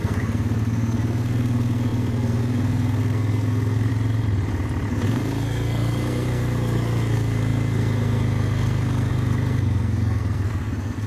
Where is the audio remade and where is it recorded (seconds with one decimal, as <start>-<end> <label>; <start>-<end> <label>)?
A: 0.0-3.9 remade; 3.9-4.9 recorded; 4.9-11.1 remade